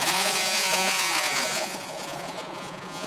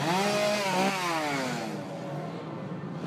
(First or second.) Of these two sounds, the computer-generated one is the first